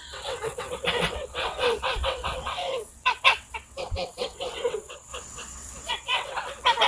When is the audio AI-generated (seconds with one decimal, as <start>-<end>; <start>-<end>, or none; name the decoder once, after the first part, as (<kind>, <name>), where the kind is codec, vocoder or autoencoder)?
0.0-6.9 (vocoder, WaveNeXt)